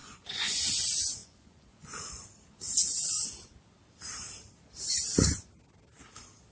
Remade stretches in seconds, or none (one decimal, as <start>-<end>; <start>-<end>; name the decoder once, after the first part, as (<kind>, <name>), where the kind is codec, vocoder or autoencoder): 0.0-0.6 (vocoder, Vocos); 1.2-2.2